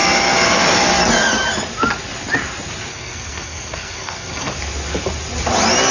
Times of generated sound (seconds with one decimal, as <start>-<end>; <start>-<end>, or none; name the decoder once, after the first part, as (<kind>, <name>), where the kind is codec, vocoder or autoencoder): 2.9-4.6 (codec, SNAC)